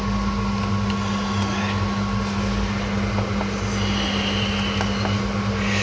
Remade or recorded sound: recorded